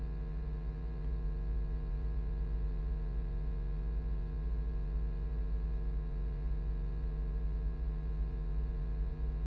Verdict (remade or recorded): remade